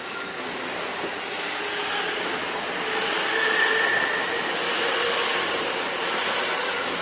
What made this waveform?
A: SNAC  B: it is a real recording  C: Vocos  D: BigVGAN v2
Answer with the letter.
B